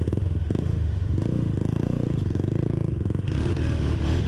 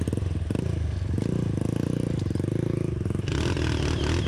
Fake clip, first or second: first